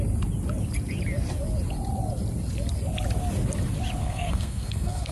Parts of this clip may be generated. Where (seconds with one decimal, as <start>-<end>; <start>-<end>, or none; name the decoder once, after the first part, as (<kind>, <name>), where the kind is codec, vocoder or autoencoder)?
4.0-5.1 (codec, SNAC)